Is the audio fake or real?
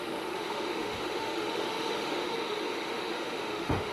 fake